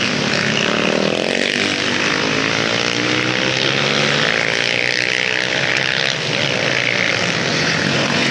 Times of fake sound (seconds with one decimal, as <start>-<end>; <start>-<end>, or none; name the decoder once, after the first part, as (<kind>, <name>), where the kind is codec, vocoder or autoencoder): 7.5-8.3 (vocoder, Vocos)